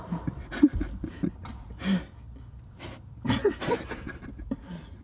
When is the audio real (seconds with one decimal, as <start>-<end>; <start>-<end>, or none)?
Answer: 0.0-5.0